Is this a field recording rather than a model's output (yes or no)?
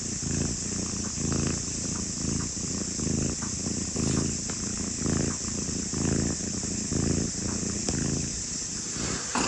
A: yes